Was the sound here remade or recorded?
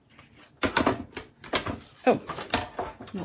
recorded